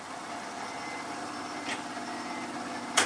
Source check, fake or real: real